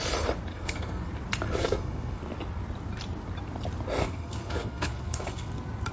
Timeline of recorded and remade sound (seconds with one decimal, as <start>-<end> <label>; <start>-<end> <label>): 0.0-0.5 recorded; 0.5-1.1 remade; 1.1-1.6 recorded; 1.6-2.2 remade; 2.2-4.0 recorded; 4.0-5.5 remade; 5.5-5.9 recorded